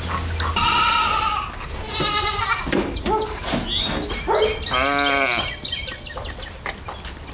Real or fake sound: real